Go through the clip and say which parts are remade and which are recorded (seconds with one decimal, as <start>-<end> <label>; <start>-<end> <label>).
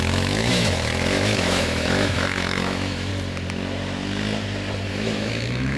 0.0-3.1 remade; 3.1-4.9 recorded; 4.9-5.8 remade